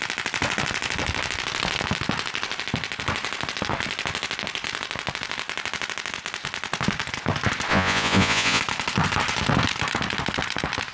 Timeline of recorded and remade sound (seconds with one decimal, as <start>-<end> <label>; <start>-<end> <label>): 0.0-7.7 recorded; 7.7-8.6 remade; 8.6-10.9 recorded

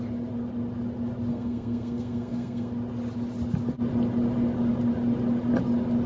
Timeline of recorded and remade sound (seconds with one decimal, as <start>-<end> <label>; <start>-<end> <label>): 0.0-1.3 recorded; 1.3-2.7 remade; 2.7-6.1 recorded

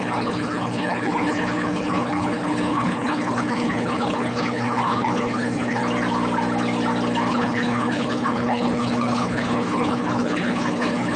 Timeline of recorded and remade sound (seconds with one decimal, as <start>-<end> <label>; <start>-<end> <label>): 0.0-5.8 remade; 5.8-7.3 recorded; 7.3-11.2 remade